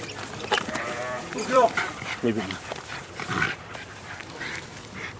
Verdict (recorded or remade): remade